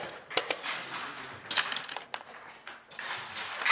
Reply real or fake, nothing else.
real